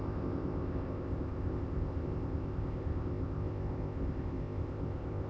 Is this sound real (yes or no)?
no